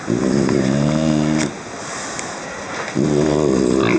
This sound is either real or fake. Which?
real